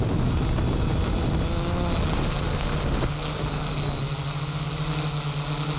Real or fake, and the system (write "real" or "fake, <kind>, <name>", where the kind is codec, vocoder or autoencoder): real